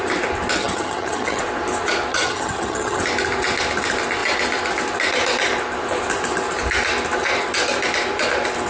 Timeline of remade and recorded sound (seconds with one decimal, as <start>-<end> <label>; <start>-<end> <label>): 0.0-0.6 recorded; 0.6-1.4 remade; 1.4-2.1 recorded; 2.1-3.0 remade; 3.0-8.7 recorded